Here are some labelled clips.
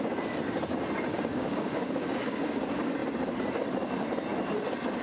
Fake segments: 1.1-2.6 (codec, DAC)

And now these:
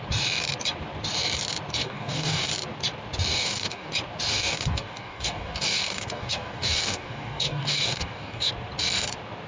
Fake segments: 1.8-2.5 (codec, DAC); 3.3-3.9; 4.3-8.5

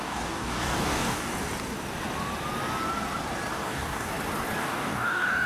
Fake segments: 0.0-1.3 (codec, DAC); 3.5-4.1; 4.6-5.5

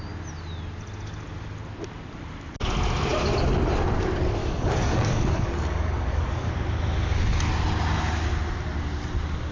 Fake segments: 4.4-6.5 (codec, DAC)

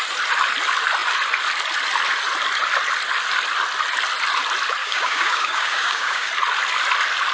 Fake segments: 4.8-6.3 (codec, DAC)

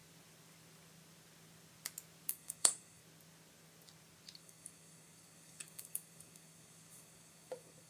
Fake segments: 2.3-3.0 (codec, DAC); 4.4-7.9

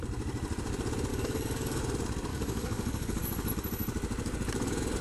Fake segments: 1.1-1.8 (codec, DAC); 2.3-3.5

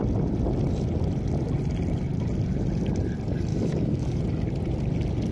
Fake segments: 3.5-4.2 (codec, DAC)